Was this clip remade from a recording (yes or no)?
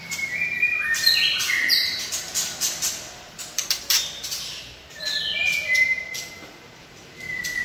yes